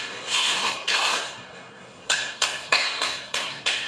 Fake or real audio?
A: fake